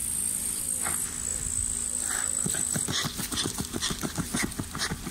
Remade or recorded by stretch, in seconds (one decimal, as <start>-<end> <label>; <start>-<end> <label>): 0.0-0.6 remade; 0.6-1.3 recorded; 1.3-4.4 remade; 4.4-5.1 recorded